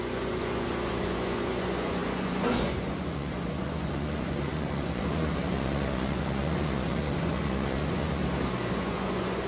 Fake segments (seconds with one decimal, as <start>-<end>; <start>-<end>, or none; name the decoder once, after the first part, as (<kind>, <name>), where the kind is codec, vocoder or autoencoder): 0.0-8.2 (vocoder, Vocos); 8.7-9.5